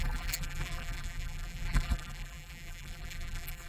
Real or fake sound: fake